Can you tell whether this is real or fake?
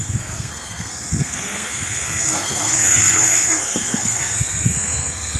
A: fake